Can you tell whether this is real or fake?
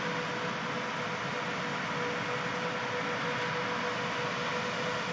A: real